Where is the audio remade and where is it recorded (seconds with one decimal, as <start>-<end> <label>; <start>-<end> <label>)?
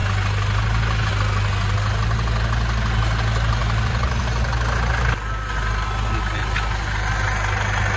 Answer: 0.0-3.6 recorded; 3.6-4.2 remade; 4.2-8.0 recorded